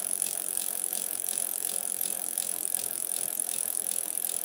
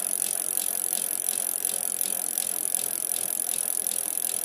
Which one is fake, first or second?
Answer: first